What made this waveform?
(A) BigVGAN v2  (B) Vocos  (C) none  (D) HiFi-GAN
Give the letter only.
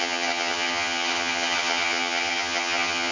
D